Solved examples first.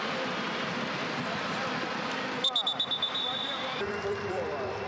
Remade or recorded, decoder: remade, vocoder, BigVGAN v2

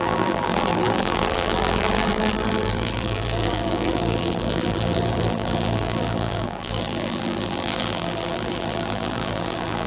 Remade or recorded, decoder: remade, vocoder, BigVGAN v2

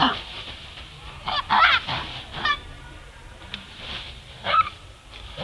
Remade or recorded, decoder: remade, vocoder, BigVGAN v2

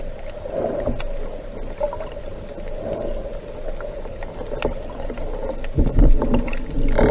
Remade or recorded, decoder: recorded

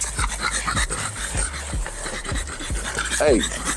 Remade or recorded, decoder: remade, vocoder, BigVGAN v2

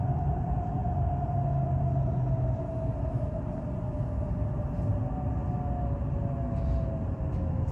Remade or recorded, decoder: recorded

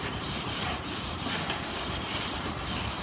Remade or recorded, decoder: remade, vocoder, BigVGAN v2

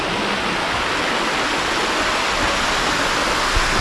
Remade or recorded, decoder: recorded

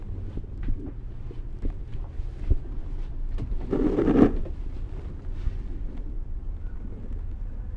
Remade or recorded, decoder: remade, vocoder, BigVGAN v2